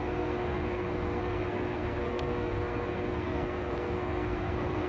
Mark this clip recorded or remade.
remade